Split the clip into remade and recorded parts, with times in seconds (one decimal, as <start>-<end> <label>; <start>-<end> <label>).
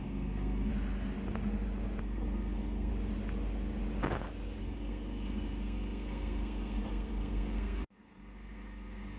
0.0-0.7 remade; 0.7-2.0 recorded; 2.0-2.9 remade; 2.9-4.6 recorded; 4.6-9.2 remade